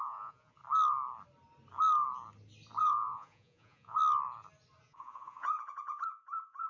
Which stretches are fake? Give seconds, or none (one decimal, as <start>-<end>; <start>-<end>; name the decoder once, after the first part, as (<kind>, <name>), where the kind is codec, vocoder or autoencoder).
0.0-0.6 (vocoder, Vocos); 2.8-4.0; 4.8-6.7